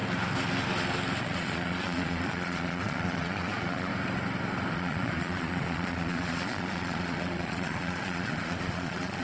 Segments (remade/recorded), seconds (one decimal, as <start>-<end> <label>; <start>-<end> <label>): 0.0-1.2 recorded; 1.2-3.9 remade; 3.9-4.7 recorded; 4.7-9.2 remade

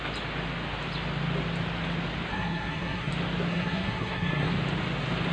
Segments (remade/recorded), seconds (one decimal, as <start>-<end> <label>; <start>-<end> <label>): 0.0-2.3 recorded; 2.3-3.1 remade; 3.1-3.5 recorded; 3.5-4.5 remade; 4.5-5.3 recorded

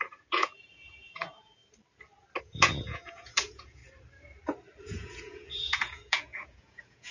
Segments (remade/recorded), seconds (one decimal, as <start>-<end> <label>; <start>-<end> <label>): 0.0-1.6 remade; 1.6-2.4 recorded; 2.4-3.8 remade; 3.8-4.8 recorded; 4.8-7.1 remade

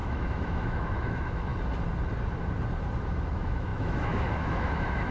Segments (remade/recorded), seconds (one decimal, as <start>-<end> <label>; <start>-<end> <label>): 0.0-1.5 remade; 1.5-3.3 recorded; 3.3-5.1 remade